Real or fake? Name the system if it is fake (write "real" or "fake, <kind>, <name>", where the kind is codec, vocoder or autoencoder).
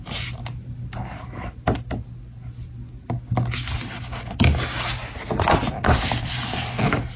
real